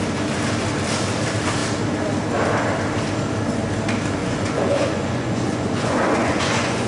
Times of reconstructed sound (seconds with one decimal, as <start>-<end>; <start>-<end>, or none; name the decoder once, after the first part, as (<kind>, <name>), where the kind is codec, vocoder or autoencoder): 4.2-6.9 (vocoder, Vocos)